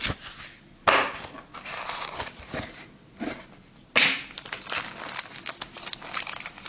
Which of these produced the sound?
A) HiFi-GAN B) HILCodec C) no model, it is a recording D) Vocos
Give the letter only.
C